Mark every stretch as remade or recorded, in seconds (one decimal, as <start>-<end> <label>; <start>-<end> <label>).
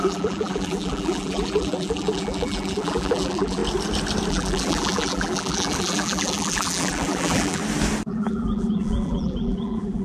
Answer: 0.0-3.6 remade; 3.6-4.3 recorded; 4.3-7.6 remade; 7.6-8.1 recorded; 8.1-10.0 remade